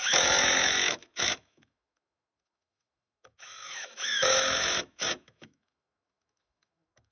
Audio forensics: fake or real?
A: fake